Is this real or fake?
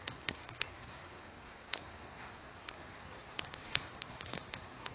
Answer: fake